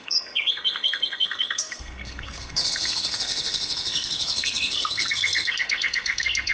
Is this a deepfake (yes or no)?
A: yes